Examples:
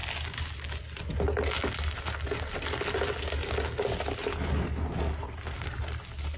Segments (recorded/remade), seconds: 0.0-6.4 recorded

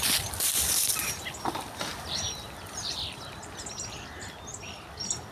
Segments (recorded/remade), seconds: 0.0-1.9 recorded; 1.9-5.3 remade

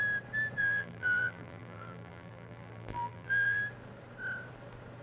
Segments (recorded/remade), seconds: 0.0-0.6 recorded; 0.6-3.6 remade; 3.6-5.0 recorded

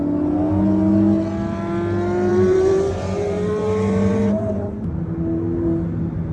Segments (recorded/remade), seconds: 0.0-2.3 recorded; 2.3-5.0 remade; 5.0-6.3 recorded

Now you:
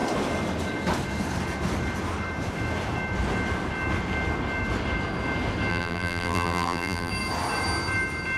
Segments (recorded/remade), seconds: 0.0-5.7 recorded; 5.7-7.1 remade; 7.1-8.4 recorded

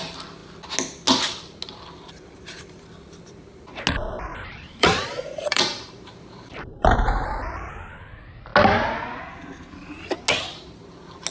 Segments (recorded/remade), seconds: 0.0-4.3 recorded; 4.3-7.7 remade; 7.7-11.3 recorded

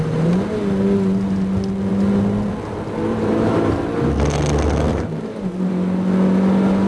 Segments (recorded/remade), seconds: 0.0-3.1 recorded; 3.1-3.7 remade; 3.7-4.9 recorded; 4.9-5.7 remade; 5.7-6.9 recorded